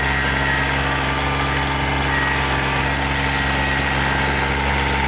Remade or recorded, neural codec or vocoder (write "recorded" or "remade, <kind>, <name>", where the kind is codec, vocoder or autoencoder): recorded